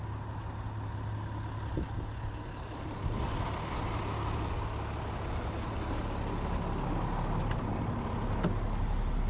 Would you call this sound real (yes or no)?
yes